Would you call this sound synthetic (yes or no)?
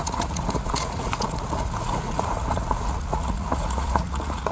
yes